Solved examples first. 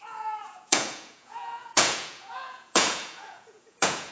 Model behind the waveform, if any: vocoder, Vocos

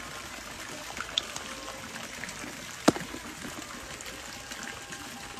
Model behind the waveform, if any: vocoder, BigVGAN v2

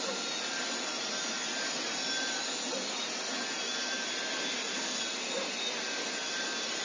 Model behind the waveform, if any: none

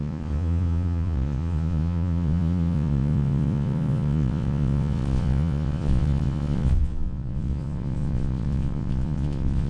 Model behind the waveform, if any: vocoder, Vocos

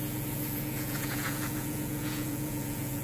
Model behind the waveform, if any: vocoder, Vocos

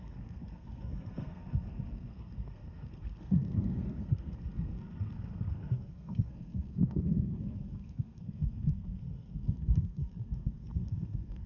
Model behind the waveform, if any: codec, SNAC